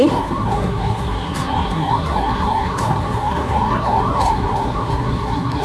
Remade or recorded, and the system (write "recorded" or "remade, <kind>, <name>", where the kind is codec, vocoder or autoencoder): remade, codec, SNAC